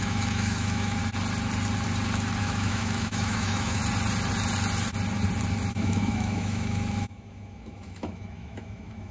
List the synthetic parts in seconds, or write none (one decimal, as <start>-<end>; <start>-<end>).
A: 0.0-1.0; 2.4-3.8; 5.7-9.1